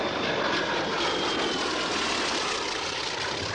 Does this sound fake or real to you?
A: real